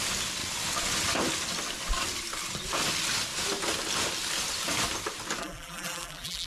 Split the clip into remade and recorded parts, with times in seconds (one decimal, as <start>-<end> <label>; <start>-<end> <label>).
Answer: 0.0-5.4 recorded; 5.4-6.5 remade